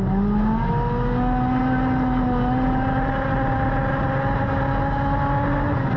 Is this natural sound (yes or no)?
yes